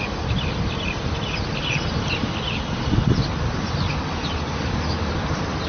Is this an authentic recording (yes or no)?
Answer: yes